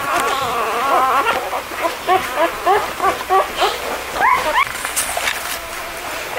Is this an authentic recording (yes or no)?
yes